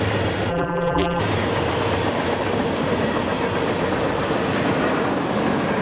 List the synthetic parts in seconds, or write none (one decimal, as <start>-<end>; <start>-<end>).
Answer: 0.5-1.2

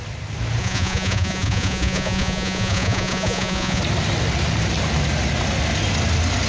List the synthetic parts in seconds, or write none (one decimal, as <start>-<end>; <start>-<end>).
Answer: 0.6-3.8

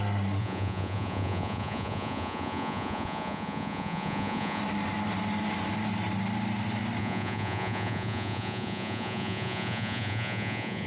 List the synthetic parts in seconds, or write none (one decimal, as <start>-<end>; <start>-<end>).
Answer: 0.4-4.6; 7.0-10.9

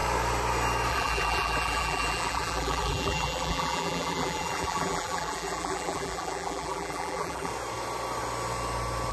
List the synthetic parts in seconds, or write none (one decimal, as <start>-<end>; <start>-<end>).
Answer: 0.9-7.5

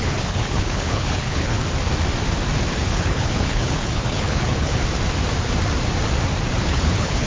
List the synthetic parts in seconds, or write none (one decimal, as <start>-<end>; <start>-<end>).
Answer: 0.0-1.6; 2.8-4.8; 6.7-7.3